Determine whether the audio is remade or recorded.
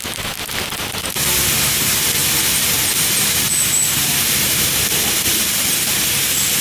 recorded